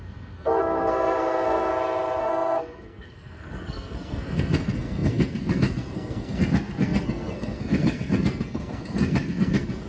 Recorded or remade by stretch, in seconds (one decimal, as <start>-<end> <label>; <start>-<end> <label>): 0.0-1.7 remade; 1.7-2.2 recorded; 2.2-9.9 remade